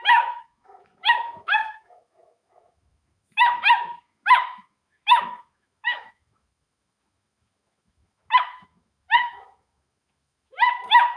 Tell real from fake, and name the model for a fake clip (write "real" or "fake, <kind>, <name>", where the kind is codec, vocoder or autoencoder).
fake, autoencoder, DAC-VAE